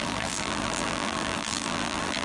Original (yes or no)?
no